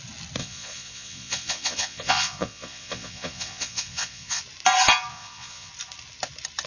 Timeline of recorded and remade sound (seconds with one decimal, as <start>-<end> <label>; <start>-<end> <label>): 0.0-0.4 recorded; 0.4-4.4 remade; 4.4-5.1 recorded; 5.1-5.7 remade; 5.7-6.7 recorded